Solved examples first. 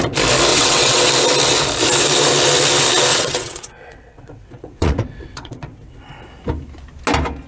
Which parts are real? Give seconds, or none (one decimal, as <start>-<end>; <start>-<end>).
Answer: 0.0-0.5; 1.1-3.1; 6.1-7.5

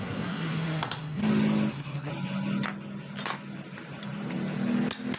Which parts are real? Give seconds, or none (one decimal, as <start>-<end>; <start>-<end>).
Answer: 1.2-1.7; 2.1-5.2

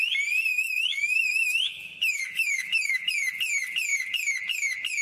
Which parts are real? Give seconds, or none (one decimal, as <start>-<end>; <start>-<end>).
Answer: 0.0-0.5; 3.1-5.0

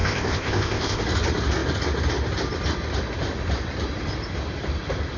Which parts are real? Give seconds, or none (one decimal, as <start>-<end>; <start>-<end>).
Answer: 1.0-5.2

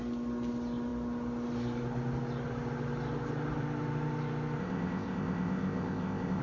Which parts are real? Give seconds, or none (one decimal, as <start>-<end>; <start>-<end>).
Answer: 0.0-4.6

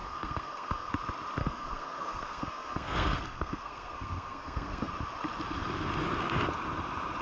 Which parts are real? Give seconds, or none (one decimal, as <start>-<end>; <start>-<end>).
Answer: 0.9-1.4; 4.9-7.2

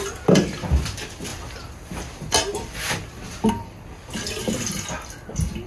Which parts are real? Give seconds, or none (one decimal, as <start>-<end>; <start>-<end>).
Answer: 0.0-5.7

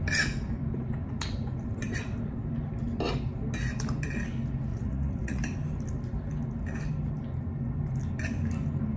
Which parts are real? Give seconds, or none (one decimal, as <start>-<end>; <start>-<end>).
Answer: 0.0-4.7; 5.4-9.0